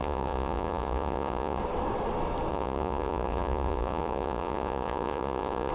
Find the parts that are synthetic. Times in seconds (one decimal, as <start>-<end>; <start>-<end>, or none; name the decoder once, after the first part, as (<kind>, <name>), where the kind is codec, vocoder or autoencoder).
0.0-1.6 (vocoder, Vocos); 2.5-5.7

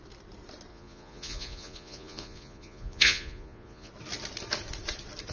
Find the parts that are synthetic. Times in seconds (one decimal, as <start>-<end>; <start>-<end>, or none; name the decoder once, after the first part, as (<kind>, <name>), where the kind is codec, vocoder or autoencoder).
0.7-3.9 (vocoder, Vocos)

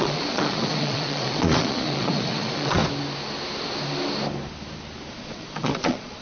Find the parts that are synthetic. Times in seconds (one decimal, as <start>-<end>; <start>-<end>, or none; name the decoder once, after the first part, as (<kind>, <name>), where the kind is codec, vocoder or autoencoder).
0.0-2.8 (vocoder, Vocos); 5.1-6.2

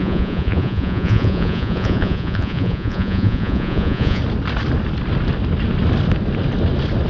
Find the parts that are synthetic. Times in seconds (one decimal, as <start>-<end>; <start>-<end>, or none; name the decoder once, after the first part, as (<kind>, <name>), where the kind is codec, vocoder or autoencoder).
0.0-4.2 (vocoder, Vocos)

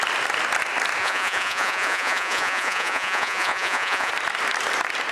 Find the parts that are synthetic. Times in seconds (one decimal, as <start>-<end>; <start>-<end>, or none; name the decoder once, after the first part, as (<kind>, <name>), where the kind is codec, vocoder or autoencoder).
1.0-4.1 (vocoder, Vocos)

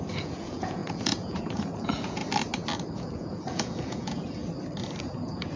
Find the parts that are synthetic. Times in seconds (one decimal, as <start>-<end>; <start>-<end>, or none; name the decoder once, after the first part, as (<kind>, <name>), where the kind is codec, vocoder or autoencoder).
0.0-2.2 (vocoder, Vocos); 3.0-4.4; 5.0-5.6

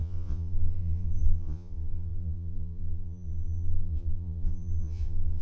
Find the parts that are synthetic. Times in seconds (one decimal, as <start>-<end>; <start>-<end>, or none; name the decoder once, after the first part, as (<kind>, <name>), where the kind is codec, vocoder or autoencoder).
0.0-5.4 (vocoder, Vocos)

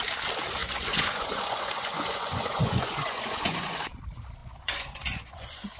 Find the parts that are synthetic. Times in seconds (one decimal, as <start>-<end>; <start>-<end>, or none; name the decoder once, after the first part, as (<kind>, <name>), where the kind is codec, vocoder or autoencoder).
0.6-4.0 (vocoder, Vocos); 4.4-5.8